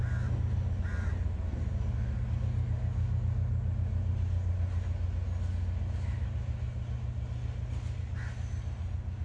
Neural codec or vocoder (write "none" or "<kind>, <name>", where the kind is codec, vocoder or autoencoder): none